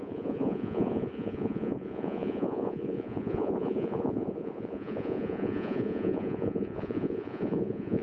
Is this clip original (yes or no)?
no